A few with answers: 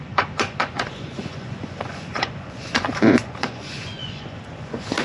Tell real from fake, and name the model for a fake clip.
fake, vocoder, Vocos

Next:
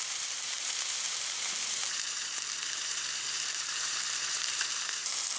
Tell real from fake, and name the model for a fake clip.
fake, vocoder, BigVGAN v2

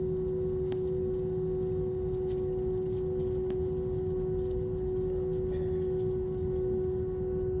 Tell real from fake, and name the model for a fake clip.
real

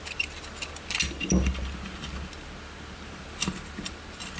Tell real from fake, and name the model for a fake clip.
real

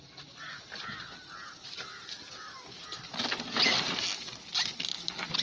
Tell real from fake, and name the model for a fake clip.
real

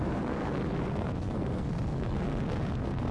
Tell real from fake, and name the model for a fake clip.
fake, codec, SNAC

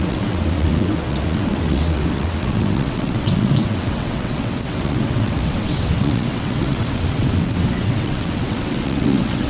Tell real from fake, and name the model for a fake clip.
fake, vocoder, WaveNeXt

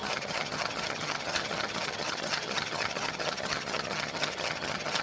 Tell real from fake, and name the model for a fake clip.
fake, vocoder, HiFi-GAN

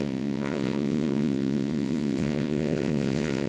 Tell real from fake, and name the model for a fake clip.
fake, vocoder, WaveNeXt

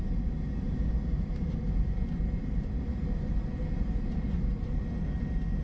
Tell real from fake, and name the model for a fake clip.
fake, vocoder, BigVGAN v2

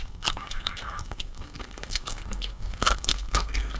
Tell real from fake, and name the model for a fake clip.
fake, codec, SNAC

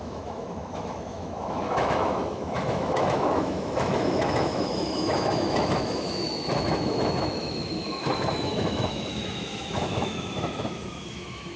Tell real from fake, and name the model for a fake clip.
fake, autoencoder, DAC-VAE